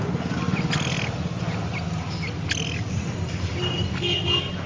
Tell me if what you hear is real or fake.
real